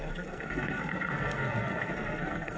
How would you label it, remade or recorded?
remade